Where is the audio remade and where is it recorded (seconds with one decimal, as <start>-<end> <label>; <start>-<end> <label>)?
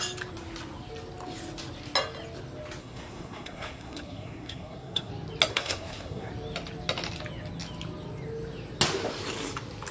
0.0-2.8 recorded; 2.8-5.1 remade; 5.1-5.5 recorded; 5.5-6.3 remade; 6.3-9.9 recorded